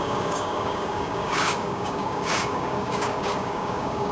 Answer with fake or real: fake